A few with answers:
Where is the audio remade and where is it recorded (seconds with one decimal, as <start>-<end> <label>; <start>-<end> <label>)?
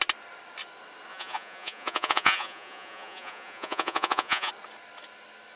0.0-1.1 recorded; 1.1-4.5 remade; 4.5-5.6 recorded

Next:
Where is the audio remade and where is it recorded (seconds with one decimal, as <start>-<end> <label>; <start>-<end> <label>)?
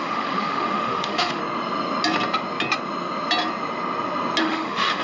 0.0-1.4 remade; 1.4-4.4 recorded; 4.4-5.0 remade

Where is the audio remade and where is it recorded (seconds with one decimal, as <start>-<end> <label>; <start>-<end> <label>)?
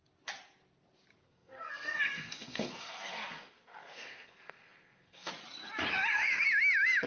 0.0-1.2 recorded; 1.2-5.3 remade; 5.3-7.1 recorded